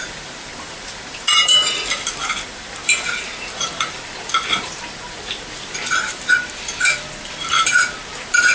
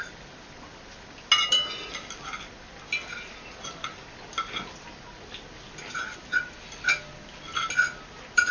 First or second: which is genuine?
second